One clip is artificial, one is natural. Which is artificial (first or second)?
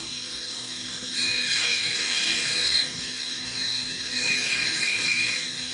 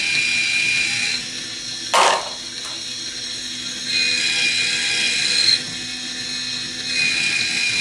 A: first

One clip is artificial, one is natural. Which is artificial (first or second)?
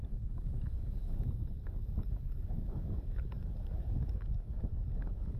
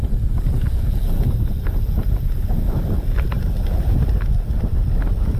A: first